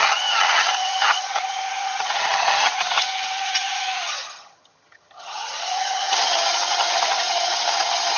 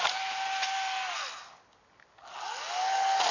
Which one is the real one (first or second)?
second